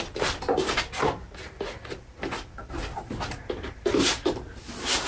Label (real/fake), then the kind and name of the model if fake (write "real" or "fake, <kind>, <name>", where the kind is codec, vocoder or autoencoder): real